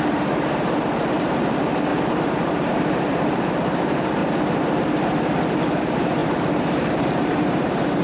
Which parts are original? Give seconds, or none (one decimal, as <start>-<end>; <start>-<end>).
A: 4.2-5.8